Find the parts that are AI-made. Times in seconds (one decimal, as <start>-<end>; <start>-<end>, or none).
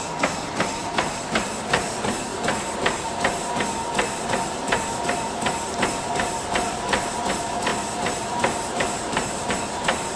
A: 0.0-10.2